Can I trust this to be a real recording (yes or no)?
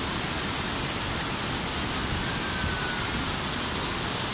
yes